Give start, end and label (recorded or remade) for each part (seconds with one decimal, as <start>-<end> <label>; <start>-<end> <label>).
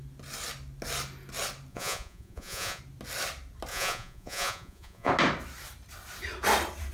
0.0-1.7 recorded; 1.7-2.8 remade; 2.8-3.7 recorded; 3.7-5.1 remade; 5.1-6.9 recorded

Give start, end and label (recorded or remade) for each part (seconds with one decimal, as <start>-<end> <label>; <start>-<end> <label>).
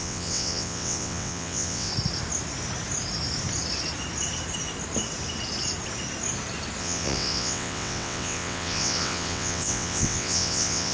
0.0-1.9 remade; 1.9-6.8 recorded; 6.8-10.9 remade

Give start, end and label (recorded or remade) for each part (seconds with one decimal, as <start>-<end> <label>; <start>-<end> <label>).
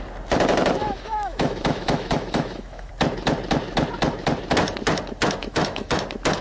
0.0-0.8 recorded; 0.8-2.9 remade; 2.9-5.4 recorded; 5.4-6.0 remade; 6.0-6.4 recorded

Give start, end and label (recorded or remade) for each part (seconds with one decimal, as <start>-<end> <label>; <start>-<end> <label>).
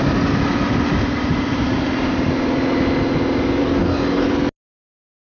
0.0-3.6 recorded; 3.6-4.3 remade; 4.3-5.3 recorded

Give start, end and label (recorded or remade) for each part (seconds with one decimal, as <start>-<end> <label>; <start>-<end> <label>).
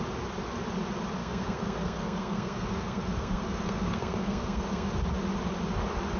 0.0-1.2 recorded; 1.2-4.9 remade; 4.9-6.2 recorded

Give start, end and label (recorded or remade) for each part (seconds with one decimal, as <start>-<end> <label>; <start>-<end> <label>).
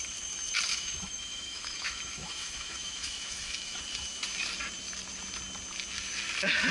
0.0-0.7 recorded; 0.7-3.8 remade; 3.8-6.7 recorded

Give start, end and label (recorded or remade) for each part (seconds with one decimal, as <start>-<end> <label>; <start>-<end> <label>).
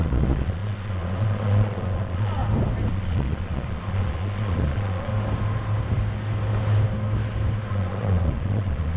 0.0-2.4 remade; 2.4-2.9 recorded; 2.9-5.1 remade; 5.1-7.7 recorded; 7.7-9.0 remade